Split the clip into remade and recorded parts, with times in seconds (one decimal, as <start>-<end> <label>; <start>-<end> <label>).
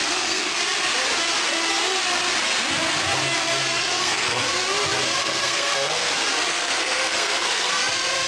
0.0-0.6 remade; 0.6-3.6 recorded; 3.6-4.4 remade; 4.4-5.2 recorded; 5.2-6.1 remade; 6.1-6.5 recorded; 6.5-7.7 remade; 7.7-8.3 recorded